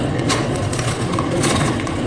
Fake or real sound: fake